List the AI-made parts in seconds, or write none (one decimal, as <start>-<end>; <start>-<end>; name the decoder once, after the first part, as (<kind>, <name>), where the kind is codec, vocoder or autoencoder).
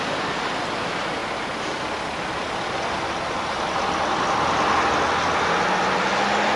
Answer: none